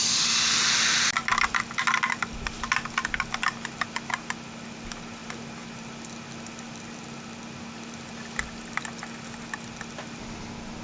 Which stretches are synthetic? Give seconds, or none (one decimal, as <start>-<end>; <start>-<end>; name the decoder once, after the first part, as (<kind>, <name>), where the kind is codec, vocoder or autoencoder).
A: none

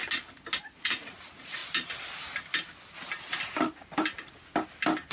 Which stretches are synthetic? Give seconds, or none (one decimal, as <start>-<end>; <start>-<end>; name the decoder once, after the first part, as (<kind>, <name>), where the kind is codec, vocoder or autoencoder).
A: 0.6-1.6 (vocoder, Vocos)

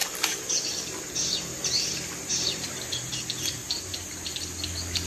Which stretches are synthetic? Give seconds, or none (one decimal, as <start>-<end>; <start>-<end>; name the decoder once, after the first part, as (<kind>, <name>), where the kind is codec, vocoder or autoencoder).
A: 0.0-3.1 (vocoder, BigVGAN v2); 3.6-4.4

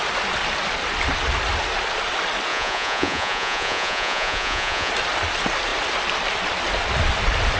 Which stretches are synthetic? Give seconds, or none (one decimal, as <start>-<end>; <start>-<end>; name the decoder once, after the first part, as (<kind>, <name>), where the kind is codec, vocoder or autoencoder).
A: 2.5-4.9 (vocoder, Vocos)

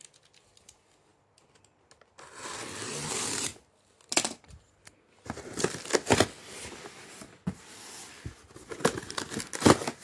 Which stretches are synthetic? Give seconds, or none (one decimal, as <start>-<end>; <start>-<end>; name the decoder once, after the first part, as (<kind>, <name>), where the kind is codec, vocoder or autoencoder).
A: none